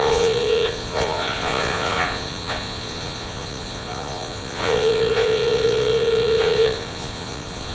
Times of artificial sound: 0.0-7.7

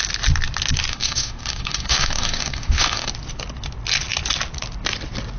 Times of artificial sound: 0.9-3.1

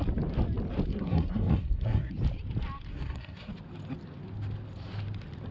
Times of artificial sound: 0.9-2.1; 2.9-3.5

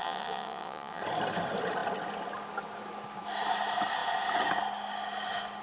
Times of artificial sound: 0.0-1.0